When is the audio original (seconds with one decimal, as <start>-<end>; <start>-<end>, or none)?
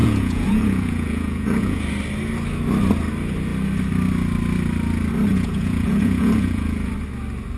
1.8-5.3; 6.9-7.6